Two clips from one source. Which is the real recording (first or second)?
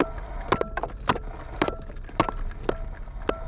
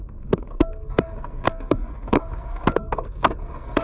first